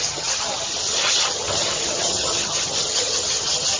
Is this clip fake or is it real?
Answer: fake